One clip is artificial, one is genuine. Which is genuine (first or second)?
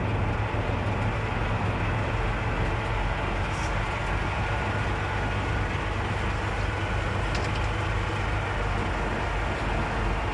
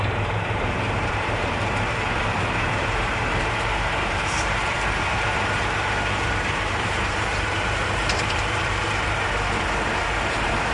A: first